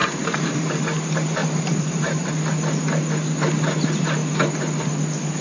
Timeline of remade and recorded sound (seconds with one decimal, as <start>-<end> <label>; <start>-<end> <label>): 0.0-0.8 remade; 0.8-1.4 recorded; 1.4-2.3 remade; 2.3-5.4 recorded